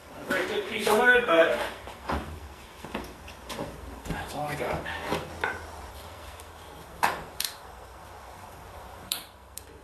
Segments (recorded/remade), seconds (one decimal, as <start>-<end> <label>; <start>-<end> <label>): 0.0-5.3 remade; 5.3-5.9 recorded; 5.9-9.8 remade